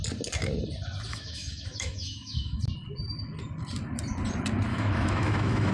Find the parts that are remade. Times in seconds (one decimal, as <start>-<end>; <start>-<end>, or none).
1.1-2.6; 4.7-5.7